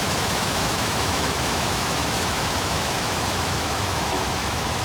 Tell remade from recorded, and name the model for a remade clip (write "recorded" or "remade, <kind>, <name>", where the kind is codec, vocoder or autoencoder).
remade, autoencoder, DAC-VAE